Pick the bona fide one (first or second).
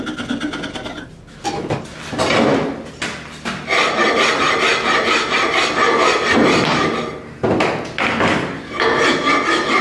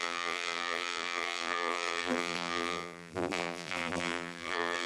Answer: first